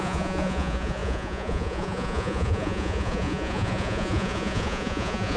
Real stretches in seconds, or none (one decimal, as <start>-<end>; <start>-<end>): none